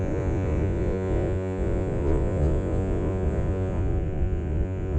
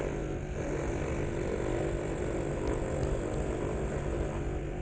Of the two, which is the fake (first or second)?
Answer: first